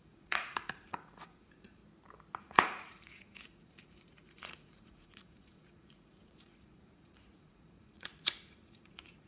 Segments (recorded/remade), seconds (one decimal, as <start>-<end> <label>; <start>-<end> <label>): 0.0-1.8 remade; 1.8-2.4 recorded; 2.4-9.3 remade